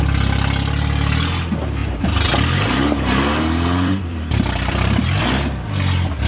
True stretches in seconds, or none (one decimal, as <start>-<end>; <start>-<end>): 0.0-1.8; 5.2-6.3